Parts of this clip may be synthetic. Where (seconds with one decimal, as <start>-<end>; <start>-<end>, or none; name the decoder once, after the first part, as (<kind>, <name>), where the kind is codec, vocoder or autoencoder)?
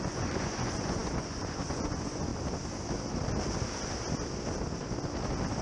0.0-2.3 (vocoder, Vocos)